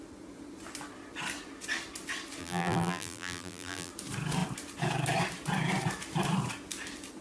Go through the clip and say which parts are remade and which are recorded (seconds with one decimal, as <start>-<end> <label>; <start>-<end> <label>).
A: 0.0-2.4 recorded; 2.4-3.9 remade; 3.9-7.2 recorded